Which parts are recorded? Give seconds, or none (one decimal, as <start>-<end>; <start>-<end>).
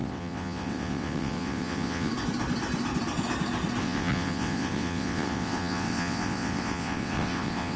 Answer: 2.1-3.8